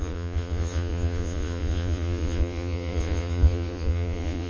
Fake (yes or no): yes